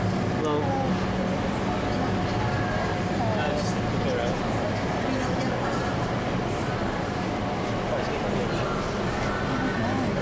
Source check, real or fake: real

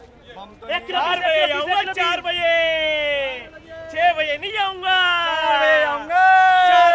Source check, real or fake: real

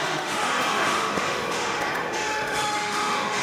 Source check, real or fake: fake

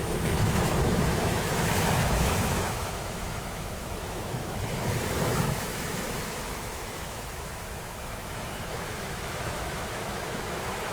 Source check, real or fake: fake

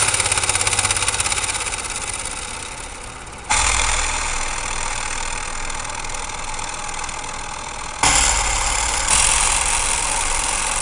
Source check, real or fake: real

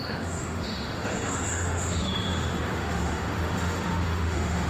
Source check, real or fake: fake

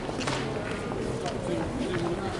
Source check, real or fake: real